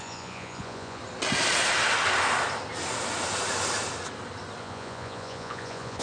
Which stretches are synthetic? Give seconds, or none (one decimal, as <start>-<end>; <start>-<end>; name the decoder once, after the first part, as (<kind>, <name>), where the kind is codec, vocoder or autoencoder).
0.0-1.0 (vocoder, Vocos); 4.6-6.0